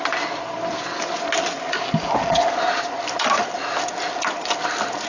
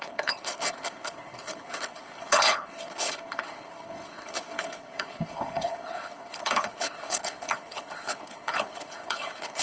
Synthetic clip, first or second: second